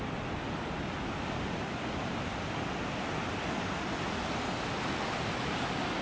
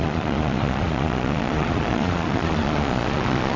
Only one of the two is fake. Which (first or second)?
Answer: second